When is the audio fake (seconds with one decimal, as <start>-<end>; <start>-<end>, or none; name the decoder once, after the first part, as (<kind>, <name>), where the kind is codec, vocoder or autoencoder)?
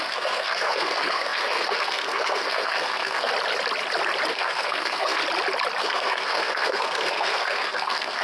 0.0-3.3 (codec, SNAC); 4.3-5.2; 5.8-8.2